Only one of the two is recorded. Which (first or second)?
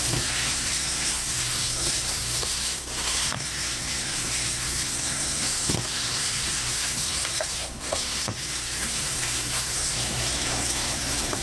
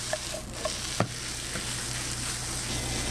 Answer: second